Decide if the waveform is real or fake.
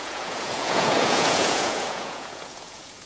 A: fake